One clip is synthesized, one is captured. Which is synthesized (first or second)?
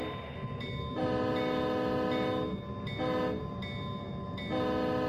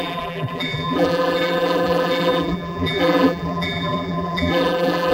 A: second